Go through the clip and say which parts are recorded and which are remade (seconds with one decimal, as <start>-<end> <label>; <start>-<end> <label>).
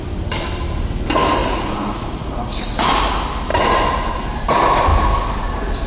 0.0-1.4 recorded; 1.4-2.9 remade; 2.9-5.9 recorded